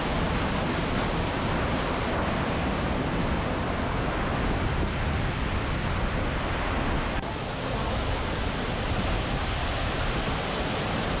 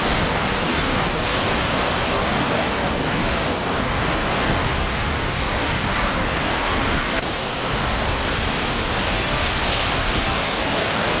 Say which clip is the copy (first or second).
second